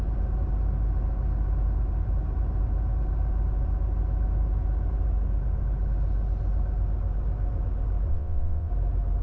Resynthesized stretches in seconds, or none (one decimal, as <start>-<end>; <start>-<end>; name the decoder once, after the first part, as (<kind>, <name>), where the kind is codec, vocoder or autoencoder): 8.1-8.7 (vocoder, WaveNeXt)